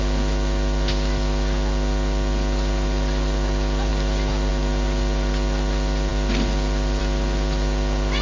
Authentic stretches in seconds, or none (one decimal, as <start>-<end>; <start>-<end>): 0.0-8.2